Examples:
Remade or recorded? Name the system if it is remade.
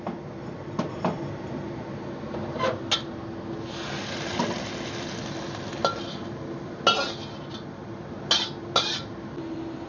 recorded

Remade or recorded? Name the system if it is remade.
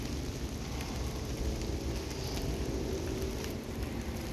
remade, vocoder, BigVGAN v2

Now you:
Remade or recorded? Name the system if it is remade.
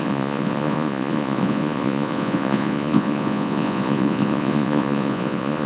remade, vocoder, Vocos